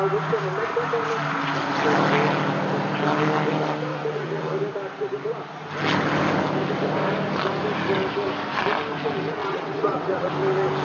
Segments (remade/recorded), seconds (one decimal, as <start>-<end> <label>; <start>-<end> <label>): 0.0-3.9 recorded; 3.9-4.4 remade; 4.4-9.4 recorded; 9.4-10.3 remade; 10.3-10.8 recorded